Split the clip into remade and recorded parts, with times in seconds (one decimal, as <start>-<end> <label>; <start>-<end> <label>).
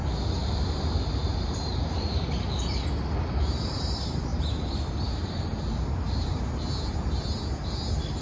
0.0-0.4 recorded; 0.4-2.2 remade; 2.2-4.3 recorded; 4.3-6.4 remade; 6.4-8.2 recorded